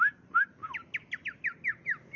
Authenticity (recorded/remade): recorded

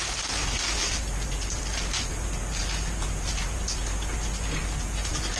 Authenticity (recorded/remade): recorded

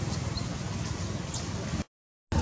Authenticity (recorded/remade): recorded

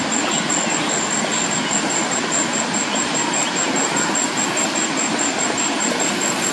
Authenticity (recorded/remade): recorded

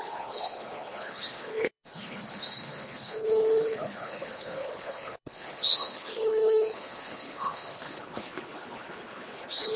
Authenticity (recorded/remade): remade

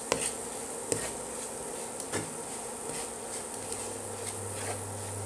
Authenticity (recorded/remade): recorded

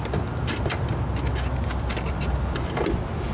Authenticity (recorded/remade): recorded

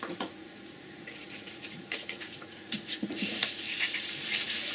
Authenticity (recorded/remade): remade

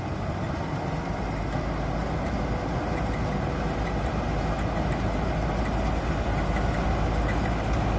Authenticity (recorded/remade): recorded